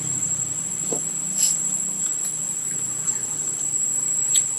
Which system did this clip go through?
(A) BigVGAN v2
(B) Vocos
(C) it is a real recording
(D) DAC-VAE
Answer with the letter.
C